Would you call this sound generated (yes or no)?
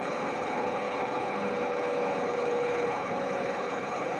yes